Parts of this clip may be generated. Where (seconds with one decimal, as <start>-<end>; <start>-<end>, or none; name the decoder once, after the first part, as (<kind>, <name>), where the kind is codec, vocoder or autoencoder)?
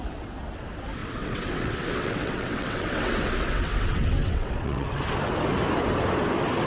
1.0-5.0 (vocoder, WaveNeXt)